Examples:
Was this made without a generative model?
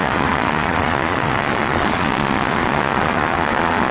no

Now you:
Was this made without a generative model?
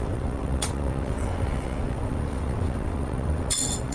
no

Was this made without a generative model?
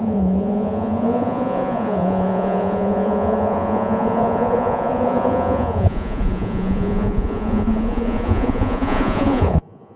no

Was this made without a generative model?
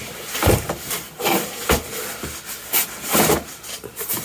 yes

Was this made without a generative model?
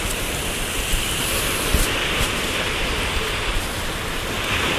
yes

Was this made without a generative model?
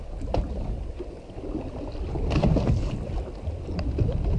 yes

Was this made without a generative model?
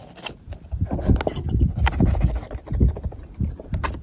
yes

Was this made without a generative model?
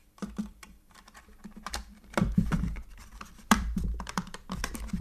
no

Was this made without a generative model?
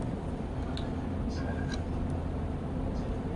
yes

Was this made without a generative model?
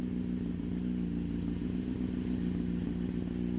yes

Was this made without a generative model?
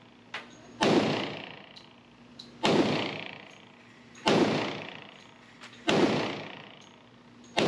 yes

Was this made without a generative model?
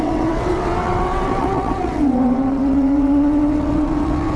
no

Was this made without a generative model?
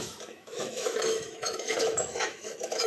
no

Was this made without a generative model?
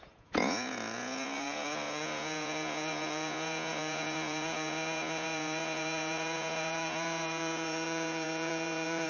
no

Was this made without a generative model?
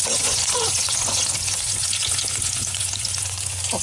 no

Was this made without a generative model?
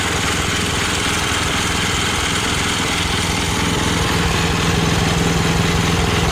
yes